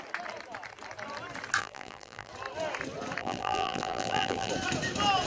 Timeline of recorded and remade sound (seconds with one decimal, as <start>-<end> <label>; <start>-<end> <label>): 0.0-1.6 recorded; 1.6-2.3 remade; 2.3-3.2 recorded; 3.2-4.5 remade; 4.5-5.3 recorded